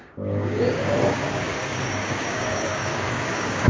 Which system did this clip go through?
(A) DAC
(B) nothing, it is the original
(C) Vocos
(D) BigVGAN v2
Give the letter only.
A